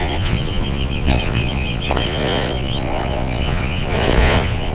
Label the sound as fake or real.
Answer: fake